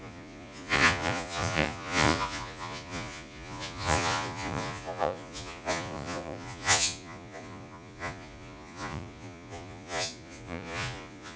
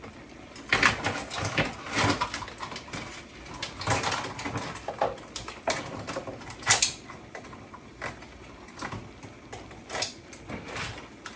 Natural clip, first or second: second